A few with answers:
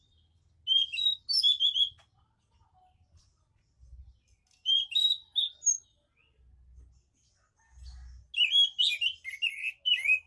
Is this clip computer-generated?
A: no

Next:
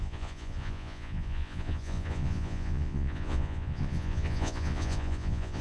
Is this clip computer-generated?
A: yes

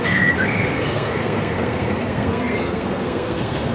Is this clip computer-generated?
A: yes